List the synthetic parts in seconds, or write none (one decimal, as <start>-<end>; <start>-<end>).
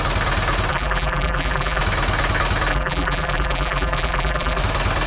0.7-1.8; 2.7-4.6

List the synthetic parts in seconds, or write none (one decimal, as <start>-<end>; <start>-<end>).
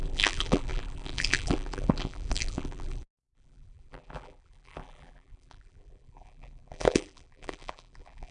0.0-8.3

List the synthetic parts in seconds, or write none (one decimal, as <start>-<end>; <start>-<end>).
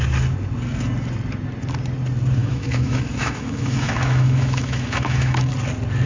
2.4-5.5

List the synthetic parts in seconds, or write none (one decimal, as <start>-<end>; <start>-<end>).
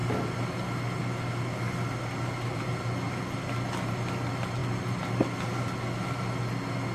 4.6-5.1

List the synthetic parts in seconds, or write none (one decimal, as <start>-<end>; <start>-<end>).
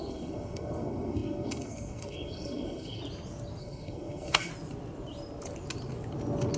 0.0-3.0; 3.6-4.5